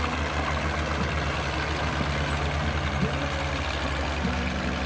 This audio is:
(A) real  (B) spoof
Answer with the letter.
A